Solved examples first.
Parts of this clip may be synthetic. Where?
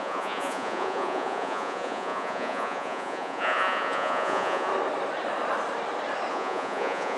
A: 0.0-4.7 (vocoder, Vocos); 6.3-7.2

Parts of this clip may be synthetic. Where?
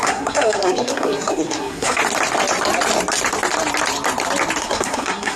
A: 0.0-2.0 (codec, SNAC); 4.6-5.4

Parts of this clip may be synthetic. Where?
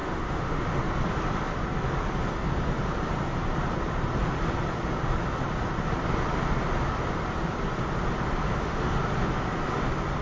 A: 0.0-0.8 (autoencoder, DAC-VAE); 8.5-9.0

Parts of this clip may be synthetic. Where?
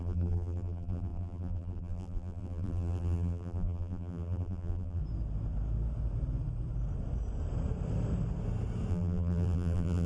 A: 0.0-5.0 (vocoder, BigVGAN v2); 8.9-10.1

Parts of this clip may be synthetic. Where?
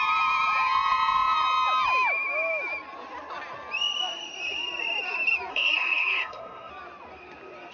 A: 5.5-6.7 (codec, SNAC)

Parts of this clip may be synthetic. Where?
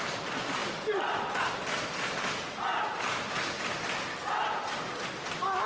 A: 0.6-2.3 (vocoder, BigVGAN v2)